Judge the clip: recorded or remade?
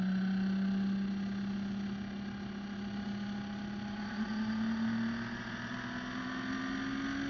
recorded